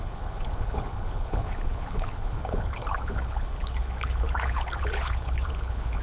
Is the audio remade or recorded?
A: remade